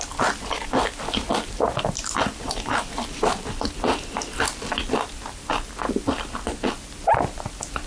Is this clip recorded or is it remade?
recorded